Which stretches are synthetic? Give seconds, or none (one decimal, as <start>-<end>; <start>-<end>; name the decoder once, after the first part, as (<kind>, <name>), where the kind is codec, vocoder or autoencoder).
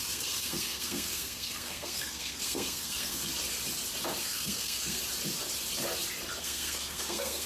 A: 0.0-3.3 (codec, SNAC); 4.2-5.0; 6.4-7.5